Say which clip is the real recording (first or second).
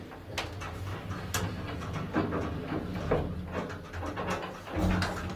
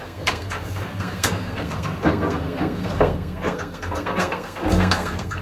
first